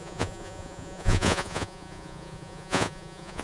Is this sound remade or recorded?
remade